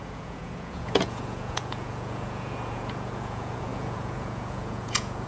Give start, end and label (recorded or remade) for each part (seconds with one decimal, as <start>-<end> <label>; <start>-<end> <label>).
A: 0.0-5.3 remade